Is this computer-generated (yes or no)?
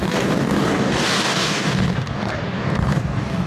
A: yes